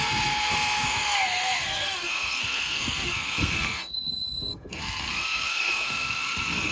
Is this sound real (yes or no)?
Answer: no